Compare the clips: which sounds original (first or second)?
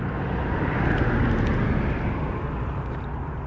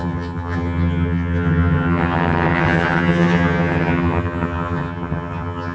first